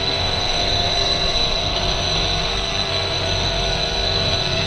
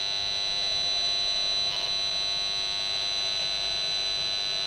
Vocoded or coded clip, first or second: first